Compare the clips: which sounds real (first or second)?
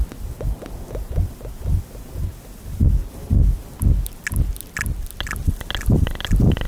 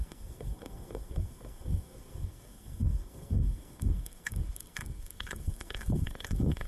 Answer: first